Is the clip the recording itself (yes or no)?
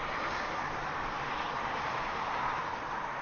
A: yes